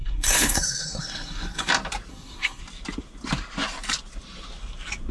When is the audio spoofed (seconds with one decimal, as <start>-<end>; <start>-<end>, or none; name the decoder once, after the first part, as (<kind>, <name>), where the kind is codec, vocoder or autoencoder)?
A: 0.0-1.7 (codec, SNAC); 2.1-2.6